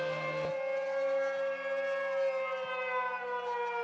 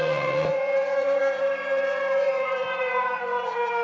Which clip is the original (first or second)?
first